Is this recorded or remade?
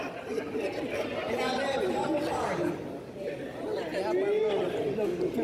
recorded